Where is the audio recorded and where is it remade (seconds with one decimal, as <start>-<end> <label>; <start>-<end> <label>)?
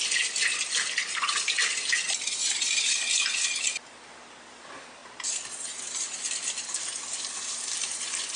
0.0-8.4 recorded